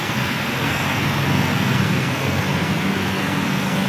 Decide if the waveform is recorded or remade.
remade